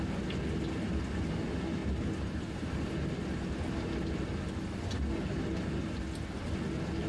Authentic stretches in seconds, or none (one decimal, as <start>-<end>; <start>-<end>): 0.0-1.8; 2.9-7.1